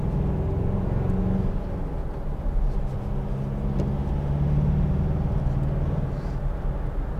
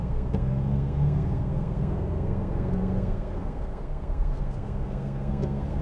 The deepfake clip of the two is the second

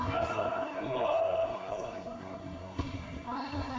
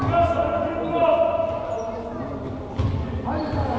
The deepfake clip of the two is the first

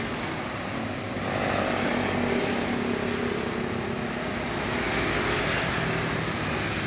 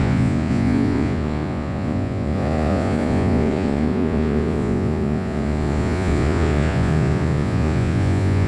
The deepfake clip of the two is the second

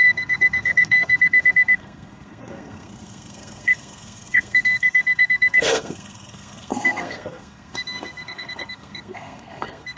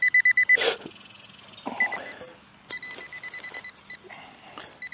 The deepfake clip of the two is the first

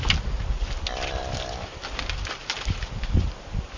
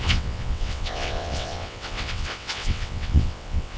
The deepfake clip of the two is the second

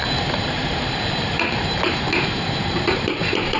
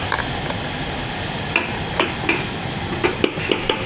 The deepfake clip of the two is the first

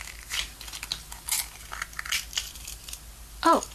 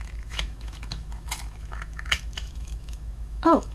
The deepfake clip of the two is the second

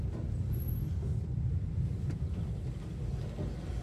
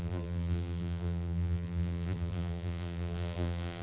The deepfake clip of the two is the second